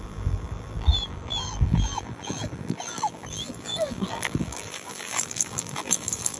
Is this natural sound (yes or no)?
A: no